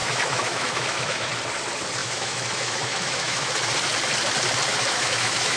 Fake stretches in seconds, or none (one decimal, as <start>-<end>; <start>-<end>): 0.0-1.3; 2.0-3.5; 4.7-5.6

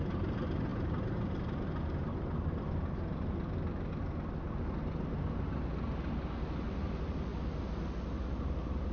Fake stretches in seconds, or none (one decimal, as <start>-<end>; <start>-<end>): none

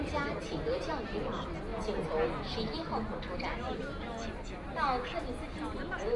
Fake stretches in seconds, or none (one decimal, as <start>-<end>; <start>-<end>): none

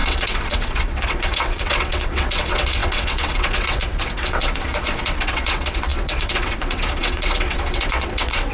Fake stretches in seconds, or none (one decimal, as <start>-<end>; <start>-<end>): 0.0-8.5

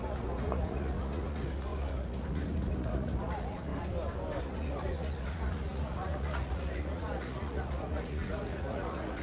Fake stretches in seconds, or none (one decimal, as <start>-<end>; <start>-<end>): 0.0-3.7; 4.4-9.2

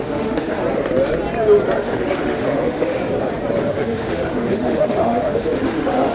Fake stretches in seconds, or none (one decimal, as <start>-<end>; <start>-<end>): 0.0-0.6; 1.8-3.0; 3.7-6.1